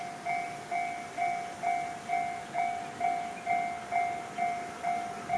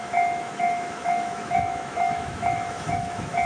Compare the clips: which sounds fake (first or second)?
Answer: second